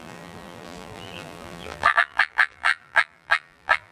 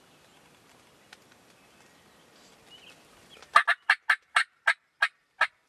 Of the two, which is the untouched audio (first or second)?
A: second